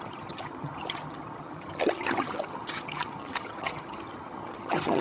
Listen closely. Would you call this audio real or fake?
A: fake